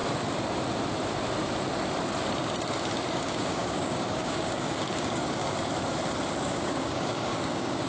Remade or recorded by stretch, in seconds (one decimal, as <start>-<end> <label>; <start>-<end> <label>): 0.0-3.1 recorded; 3.1-5.4 remade; 5.4-6.4 recorded; 6.4-7.9 remade